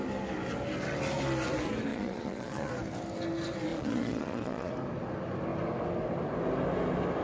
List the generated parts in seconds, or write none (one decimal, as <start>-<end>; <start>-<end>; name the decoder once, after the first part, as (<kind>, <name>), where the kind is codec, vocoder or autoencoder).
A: 1.9-2.7 (vocoder, Vocos); 3.7-4.7

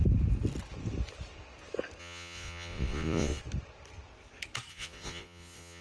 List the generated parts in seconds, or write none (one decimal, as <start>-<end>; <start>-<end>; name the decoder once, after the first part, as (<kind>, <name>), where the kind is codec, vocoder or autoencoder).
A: 2.0-3.4 (vocoder, Vocos); 4.7-5.8

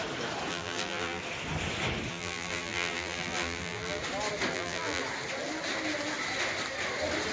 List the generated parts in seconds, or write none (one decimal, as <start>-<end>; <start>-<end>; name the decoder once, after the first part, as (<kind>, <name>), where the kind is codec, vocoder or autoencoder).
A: 0.5-1.2 (vocoder, BigVGAN v2); 2.1-4.0; 4.5-5.0